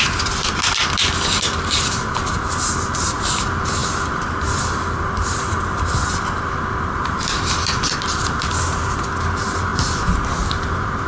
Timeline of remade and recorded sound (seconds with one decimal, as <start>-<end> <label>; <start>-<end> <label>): 0.0-11.1 recorded